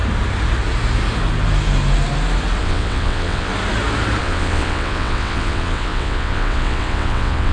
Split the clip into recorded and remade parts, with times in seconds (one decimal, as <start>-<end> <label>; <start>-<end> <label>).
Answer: 0.0-2.6 recorded; 2.6-3.5 remade; 3.5-4.2 recorded; 4.2-7.5 remade